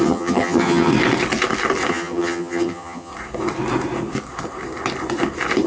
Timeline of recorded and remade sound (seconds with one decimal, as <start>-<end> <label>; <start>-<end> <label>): 0.0-0.9 remade; 0.9-1.9 recorded; 1.9-3.1 remade; 3.1-5.7 recorded